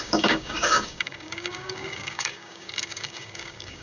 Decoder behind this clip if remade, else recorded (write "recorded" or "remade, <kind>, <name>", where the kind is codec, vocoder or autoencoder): remade, codec, DAC